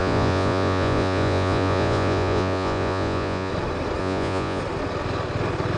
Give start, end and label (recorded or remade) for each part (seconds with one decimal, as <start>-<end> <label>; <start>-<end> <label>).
0.0-3.5 remade; 3.5-4.0 recorded; 4.0-4.6 remade; 4.6-5.8 recorded